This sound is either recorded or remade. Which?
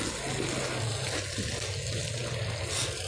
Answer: recorded